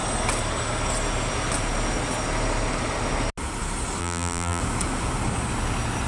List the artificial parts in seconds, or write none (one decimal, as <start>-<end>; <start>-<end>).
4.0-4.6